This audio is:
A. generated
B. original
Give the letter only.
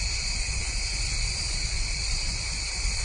A